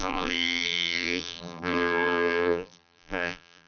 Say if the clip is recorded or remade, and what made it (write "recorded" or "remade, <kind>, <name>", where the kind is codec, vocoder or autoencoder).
remade, vocoder, BigVGAN v2